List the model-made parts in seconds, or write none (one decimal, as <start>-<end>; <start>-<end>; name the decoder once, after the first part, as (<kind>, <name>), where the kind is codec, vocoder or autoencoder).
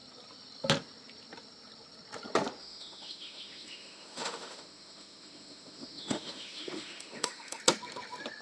2.6-7.6 (autoencoder, DAC-VAE)